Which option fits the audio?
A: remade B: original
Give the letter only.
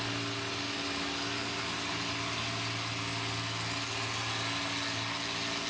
B